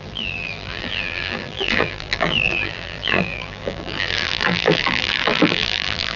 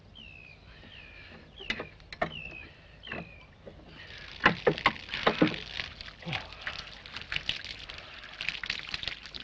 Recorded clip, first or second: second